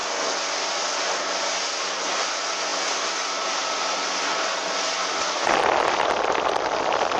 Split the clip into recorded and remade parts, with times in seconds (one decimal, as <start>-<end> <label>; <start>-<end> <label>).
0.0-7.2 recorded